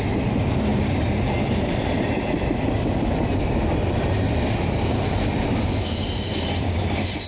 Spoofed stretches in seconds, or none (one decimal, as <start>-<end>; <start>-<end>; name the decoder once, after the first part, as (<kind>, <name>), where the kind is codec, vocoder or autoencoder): none